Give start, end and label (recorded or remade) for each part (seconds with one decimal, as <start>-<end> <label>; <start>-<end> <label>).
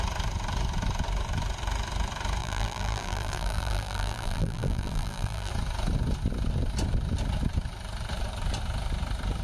0.0-2.4 recorded; 2.4-5.5 remade; 5.5-9.4 recorded